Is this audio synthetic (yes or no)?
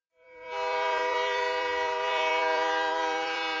yes